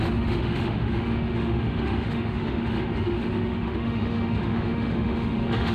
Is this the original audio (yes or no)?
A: no